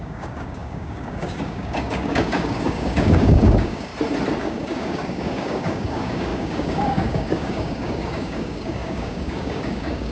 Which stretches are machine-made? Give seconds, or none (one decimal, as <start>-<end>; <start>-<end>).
0.0-3.9; 4.4-10.1